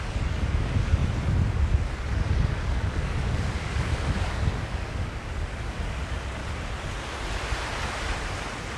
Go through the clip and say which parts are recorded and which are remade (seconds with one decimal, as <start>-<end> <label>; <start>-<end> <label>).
0.0-1.0 remade; 1.0-1.5 recorded; 1.5-6.4 remade; 6.4-8.8 recorded